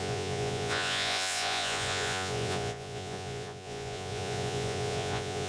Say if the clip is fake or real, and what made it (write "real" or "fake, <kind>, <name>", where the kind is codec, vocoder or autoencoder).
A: fake, vocoder, Vocos